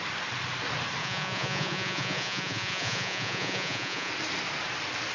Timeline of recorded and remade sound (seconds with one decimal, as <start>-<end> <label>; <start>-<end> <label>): 0.0-1.0 recorded; 1.0-4.1 remade; 4.1-5.1 recorded

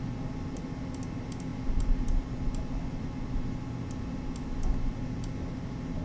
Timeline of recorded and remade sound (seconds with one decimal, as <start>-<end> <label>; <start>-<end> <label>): 0.0-6.0 recorded